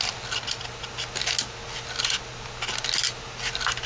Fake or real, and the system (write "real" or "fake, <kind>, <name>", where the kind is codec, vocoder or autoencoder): real